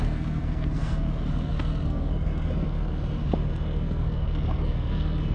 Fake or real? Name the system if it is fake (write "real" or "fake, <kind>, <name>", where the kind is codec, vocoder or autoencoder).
fake, codec, SNAC